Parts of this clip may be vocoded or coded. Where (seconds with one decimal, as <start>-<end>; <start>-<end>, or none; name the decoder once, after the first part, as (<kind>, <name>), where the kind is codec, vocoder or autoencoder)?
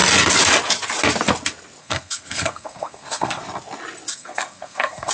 1.8-3.4 (codec, SNAC); 4.1-5.1